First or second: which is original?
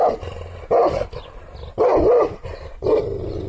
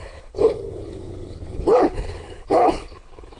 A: first